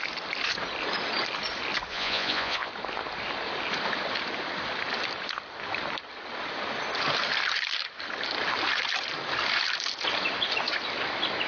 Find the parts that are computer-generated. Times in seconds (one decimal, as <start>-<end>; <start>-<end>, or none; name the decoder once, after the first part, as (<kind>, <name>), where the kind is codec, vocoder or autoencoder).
1.9-2.7 (vocoder, Vocos)